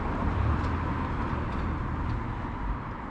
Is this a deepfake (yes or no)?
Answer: no